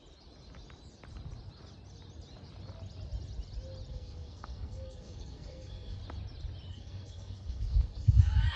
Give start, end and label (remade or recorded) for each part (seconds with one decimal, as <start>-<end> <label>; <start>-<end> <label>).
0.0-3.9 recorded; 3.9-6.0 remade; 6.0-6.7 recorded; 6.7-8.6 remade